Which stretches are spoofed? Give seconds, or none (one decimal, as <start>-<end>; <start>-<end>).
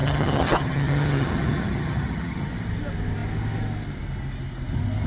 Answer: 0.0-2.5